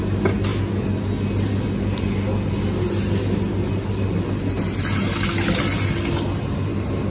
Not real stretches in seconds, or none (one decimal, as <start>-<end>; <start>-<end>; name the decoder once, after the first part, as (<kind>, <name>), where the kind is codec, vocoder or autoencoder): none